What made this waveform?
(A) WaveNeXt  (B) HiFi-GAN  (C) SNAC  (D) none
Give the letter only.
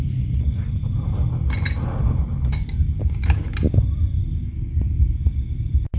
D